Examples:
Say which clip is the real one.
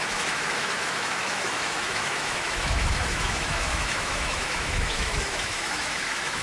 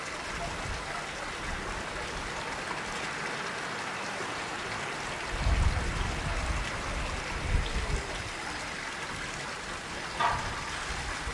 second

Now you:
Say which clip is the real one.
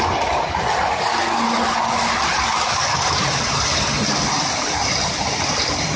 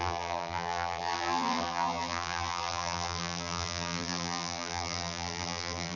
first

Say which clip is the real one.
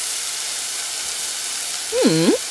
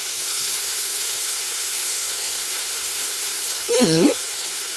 first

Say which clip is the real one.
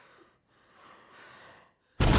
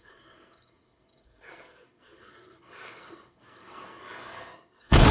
first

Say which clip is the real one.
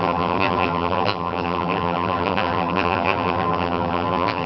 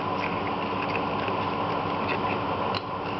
second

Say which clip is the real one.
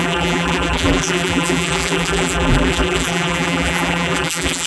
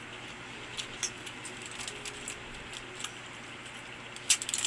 second